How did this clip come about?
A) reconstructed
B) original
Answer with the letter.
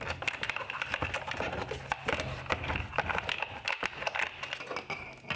B